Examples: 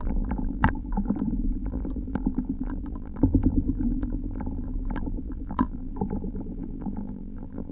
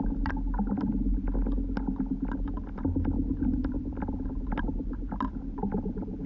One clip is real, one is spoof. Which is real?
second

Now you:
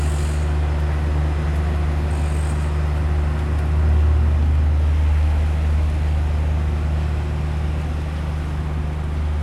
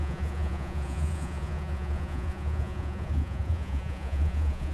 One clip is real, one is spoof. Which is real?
first